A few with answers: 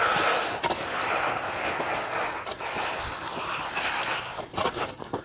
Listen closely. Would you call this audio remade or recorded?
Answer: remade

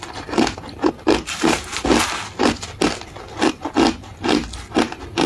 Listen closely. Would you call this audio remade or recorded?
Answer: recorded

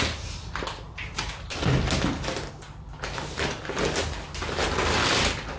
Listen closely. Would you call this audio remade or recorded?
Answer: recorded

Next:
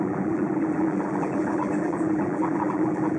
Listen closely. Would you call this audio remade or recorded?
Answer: remade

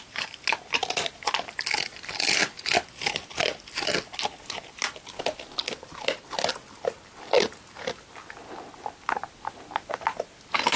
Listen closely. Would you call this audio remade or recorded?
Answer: recorded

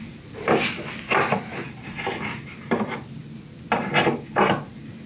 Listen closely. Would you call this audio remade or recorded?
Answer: recorded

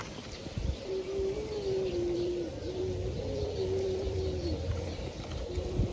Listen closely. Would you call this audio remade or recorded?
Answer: remade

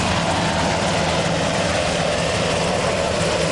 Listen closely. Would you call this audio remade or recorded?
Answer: recorded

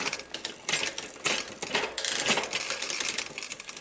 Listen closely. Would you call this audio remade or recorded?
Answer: recorded